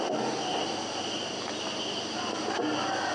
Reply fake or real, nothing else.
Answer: real